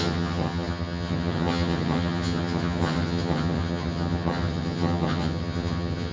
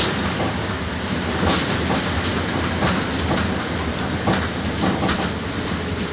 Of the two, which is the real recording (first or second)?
second